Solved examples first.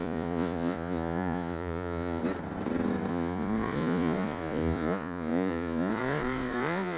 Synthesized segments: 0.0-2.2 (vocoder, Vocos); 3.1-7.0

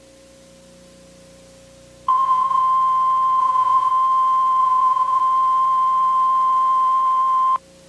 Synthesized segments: 2.1-2.6 (vocoder, Vocos); 3.4-3.9; 4.6-5.2

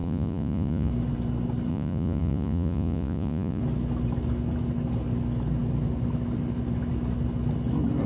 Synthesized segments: 0.0-0.9 (vocoder, Vocos); 1.7-3.6

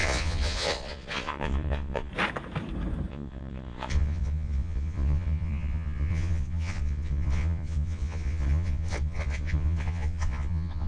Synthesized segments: 0.0-2.1 (vocoder, Vocos); 3.1-10.9

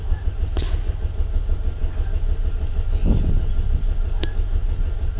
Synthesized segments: none

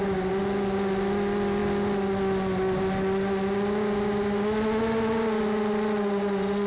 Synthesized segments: none

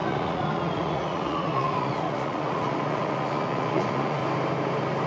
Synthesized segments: 0.0-4.2 (vocoder, Vocos)